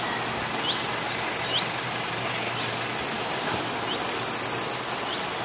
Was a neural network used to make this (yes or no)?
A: no